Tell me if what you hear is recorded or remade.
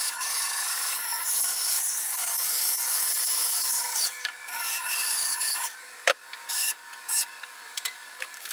remade